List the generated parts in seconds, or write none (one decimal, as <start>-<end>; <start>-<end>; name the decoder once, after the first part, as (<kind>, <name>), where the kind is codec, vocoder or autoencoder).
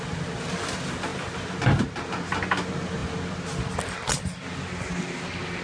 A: none